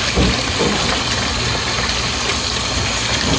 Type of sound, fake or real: real